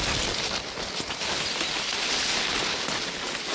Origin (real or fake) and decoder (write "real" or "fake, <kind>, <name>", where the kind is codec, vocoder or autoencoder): real